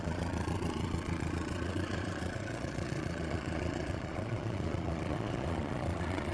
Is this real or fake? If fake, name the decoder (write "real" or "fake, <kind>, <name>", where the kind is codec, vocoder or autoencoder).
fake, vocoder, Vocos